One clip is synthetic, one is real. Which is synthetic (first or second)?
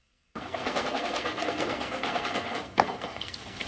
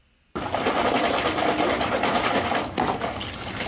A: first